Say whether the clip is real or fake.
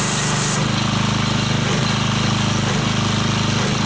real